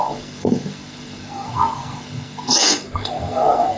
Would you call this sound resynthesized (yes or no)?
yes